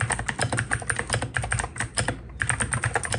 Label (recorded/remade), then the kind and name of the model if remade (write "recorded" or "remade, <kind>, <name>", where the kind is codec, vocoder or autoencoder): recorded